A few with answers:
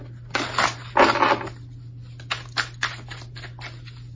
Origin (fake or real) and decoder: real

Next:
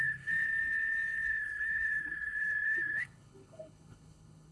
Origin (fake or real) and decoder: fake, codec, HILCodec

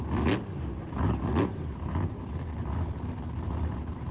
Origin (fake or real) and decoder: real